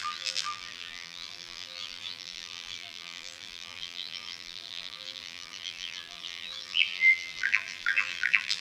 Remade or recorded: remade